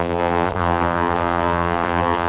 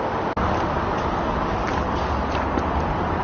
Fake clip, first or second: first